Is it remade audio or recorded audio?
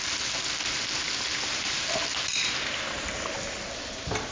recorded